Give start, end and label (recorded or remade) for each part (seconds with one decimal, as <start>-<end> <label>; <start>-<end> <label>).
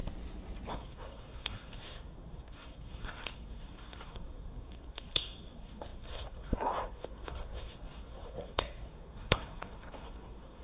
0.0-0.7 recorded; 0.7-10.6 remade